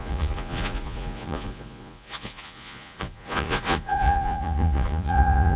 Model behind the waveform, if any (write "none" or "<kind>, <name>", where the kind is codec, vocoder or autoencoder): vocoder, Vocos